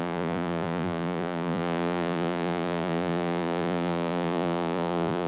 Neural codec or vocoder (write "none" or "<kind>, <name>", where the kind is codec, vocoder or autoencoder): vocoder, Vocos